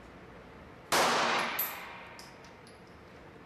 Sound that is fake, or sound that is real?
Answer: real